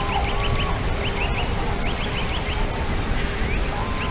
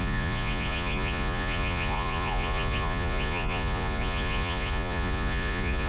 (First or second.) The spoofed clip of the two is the second